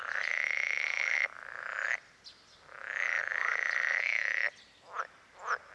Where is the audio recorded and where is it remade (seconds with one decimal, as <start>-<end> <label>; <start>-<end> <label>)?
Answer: 0.0-5.7 recorded